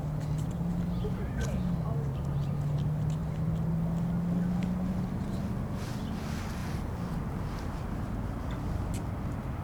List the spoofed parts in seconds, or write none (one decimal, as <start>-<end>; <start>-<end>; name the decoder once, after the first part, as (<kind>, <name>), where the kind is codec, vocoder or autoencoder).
none

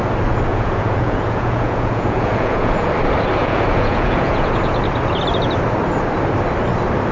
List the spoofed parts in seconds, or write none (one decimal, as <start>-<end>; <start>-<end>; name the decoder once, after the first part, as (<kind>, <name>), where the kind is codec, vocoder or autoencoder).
0.5-2.9 (vocoder, Vocos); 3.4-4.8

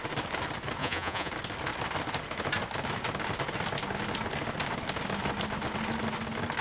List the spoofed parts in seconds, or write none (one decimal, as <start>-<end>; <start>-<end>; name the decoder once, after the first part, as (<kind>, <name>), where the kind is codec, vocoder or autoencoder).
0.8-1.3 (vocoder, Vocos)

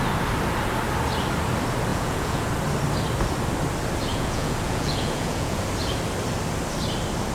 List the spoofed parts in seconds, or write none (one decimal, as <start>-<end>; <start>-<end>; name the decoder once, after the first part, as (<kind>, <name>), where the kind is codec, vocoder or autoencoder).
1.9-2.5 (vocoder, Vocos); 4.1-5.6

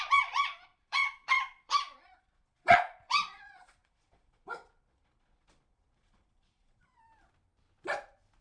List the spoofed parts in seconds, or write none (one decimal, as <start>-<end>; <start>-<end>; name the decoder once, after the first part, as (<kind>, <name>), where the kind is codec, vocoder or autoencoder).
0.0-7.0 (vocoder, Vocos)

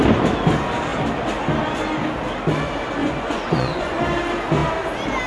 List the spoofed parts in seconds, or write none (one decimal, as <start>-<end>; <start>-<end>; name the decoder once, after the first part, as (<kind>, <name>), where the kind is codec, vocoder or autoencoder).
3.0-4.0 (vocoder, Vocos)

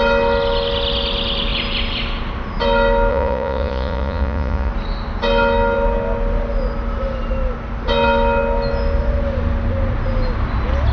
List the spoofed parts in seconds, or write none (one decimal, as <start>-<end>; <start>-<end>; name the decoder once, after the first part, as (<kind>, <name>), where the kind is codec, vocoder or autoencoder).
3.1-4.7 (vocoder, Vocos)

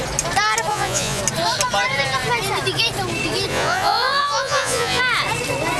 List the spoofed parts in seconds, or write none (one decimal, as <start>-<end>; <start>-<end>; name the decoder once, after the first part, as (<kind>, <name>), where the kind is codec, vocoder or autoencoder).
0.7-1.2 (vocoder, Vocos); 3.5-5.0